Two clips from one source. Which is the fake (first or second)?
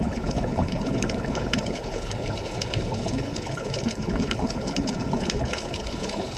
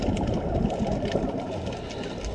first